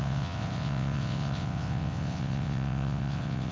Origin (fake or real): fake